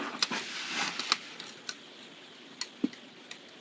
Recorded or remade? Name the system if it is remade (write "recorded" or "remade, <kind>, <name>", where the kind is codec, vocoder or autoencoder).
recorded